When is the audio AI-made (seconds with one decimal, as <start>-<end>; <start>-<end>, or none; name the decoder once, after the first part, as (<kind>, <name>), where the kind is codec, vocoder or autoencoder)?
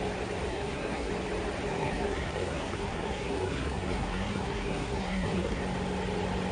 0.5-1.1 (codec, SNAC); 1.7-5.6